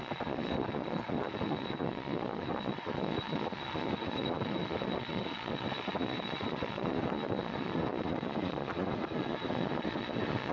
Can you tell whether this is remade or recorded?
remade